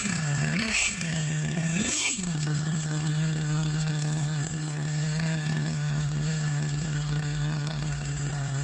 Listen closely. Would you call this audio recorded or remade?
remade